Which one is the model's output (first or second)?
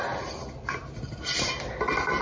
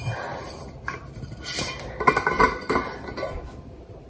second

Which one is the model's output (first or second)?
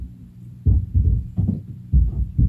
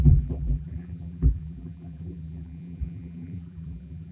second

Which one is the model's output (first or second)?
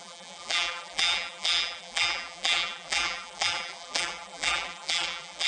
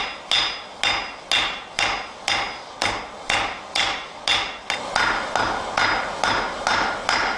first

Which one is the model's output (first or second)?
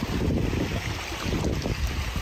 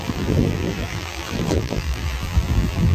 second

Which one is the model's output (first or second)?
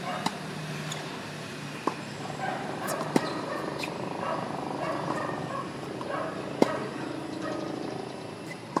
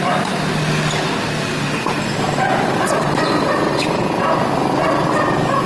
first